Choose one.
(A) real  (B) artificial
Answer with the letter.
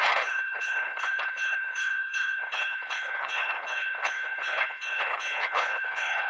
B